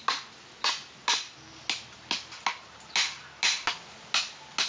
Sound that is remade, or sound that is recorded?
recorded